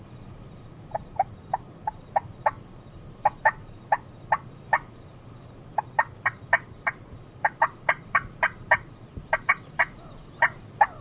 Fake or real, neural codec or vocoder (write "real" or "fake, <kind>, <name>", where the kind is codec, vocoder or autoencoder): fake, vocoder, BigVGAN v2